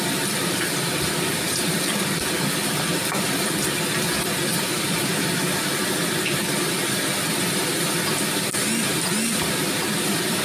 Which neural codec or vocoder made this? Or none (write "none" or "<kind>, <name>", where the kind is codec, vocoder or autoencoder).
vocoder, BigVGAN v2